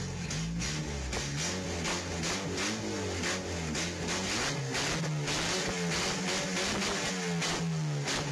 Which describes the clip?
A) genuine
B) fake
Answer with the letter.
A